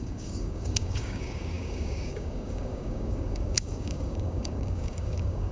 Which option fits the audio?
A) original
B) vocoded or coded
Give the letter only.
B